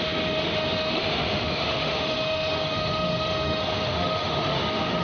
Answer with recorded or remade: remade